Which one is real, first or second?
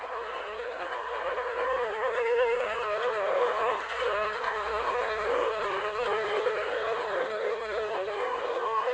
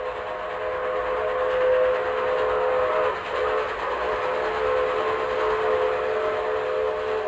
second